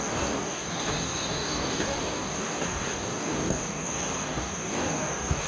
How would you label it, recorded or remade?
remade